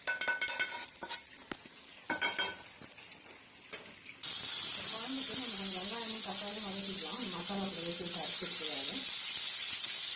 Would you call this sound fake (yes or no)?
no